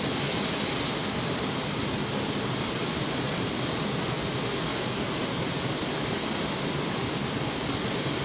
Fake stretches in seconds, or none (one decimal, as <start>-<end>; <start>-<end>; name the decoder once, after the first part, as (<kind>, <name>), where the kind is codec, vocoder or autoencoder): 4.7-5.6 (vocoder, BigVGAN v2)